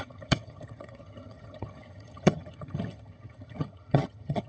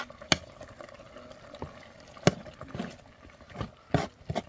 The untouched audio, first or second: second